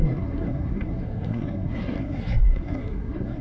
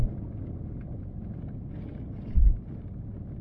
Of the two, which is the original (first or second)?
second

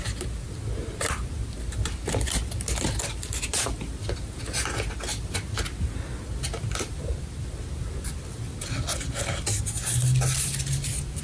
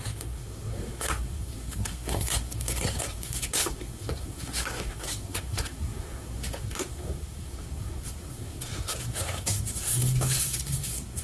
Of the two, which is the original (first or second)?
first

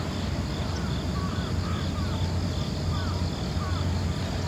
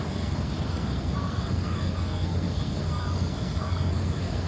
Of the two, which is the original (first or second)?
first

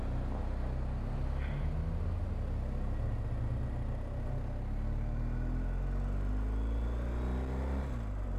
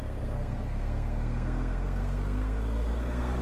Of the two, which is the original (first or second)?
first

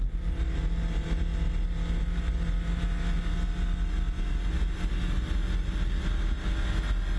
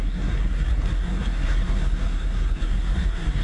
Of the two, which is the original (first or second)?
first